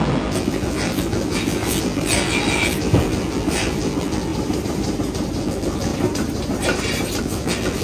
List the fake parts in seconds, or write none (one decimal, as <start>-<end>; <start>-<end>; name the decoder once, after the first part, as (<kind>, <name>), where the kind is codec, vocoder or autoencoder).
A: 0.0-4.3 (vocoder, BigVGAN v2); 5.4-5.9; 7.2-7.8